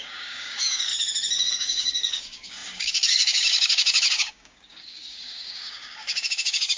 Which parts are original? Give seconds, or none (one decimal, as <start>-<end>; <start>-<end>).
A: 0.9-1.5